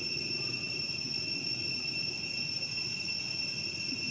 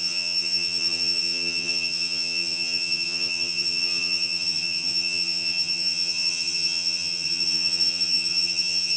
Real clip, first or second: first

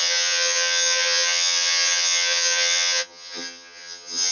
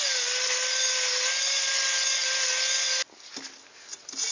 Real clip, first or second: second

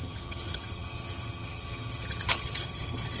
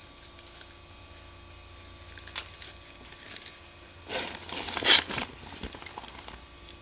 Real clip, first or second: second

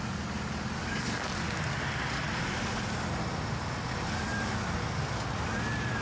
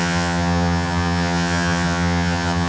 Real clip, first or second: first